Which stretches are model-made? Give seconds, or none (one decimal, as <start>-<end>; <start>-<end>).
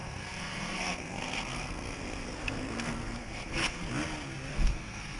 0.0-3.8; 4.5-5.2